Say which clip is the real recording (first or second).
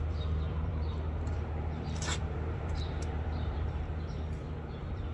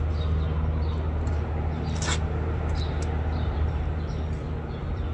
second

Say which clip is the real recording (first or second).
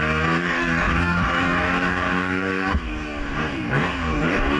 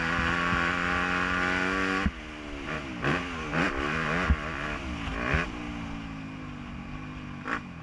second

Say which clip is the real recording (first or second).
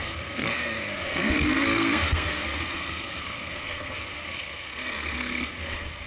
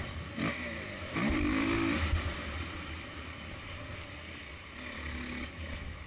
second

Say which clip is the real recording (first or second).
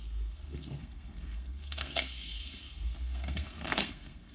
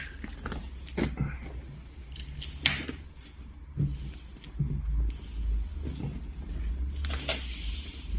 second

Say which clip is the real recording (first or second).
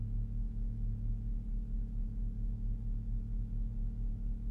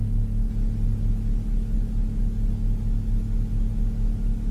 second